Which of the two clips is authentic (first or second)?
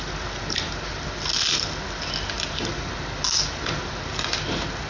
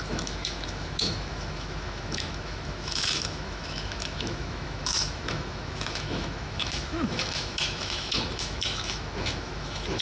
first